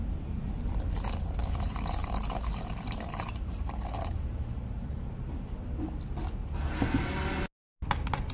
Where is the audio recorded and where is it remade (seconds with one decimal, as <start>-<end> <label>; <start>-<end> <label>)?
0.0-1.4 recorded; 1.4-5.1 remade; 5.1-8.3 recorded